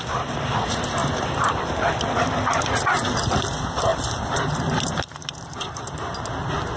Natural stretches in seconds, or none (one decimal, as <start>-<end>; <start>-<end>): 0.0-1.0; 1.9-3.9; 6.0-6.8